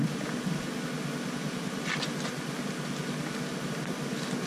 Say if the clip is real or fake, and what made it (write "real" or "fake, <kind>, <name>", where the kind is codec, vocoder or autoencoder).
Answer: real